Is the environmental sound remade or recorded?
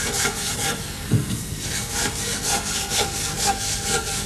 remade